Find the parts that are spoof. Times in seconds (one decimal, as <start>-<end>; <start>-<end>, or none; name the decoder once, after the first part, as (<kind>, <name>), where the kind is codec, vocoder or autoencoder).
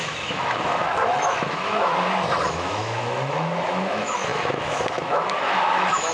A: 0.0-1.9 (autoencoder, DAC-VAE); 2.4-6.1